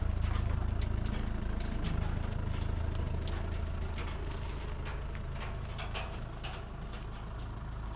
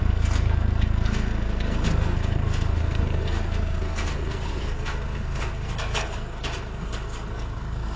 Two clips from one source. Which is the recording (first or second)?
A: first